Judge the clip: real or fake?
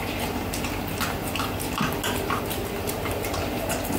real